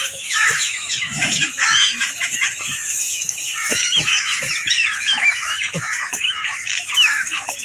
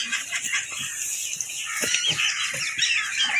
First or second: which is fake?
first